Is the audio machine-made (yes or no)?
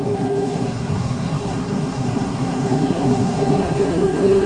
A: yes